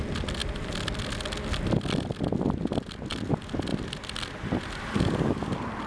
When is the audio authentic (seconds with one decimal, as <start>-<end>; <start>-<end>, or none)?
0.0-5.9